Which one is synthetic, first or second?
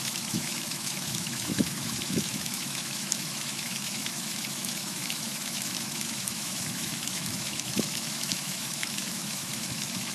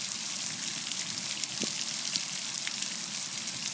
first